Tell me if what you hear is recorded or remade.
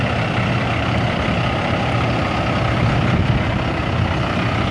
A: recorded